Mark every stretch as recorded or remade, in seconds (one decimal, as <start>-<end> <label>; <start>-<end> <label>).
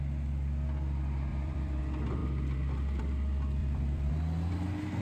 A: 0.0-1.3 recorded; 1.3-1.8 remade; 1.8-3.6 recorded; 3.6-4.1 remade; 4.1-5.0 recorded